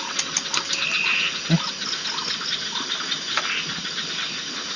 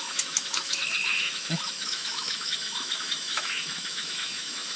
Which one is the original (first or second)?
first